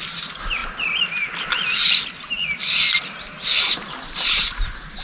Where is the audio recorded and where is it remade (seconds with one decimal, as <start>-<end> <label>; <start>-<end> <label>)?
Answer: 0.0-5.0 recorded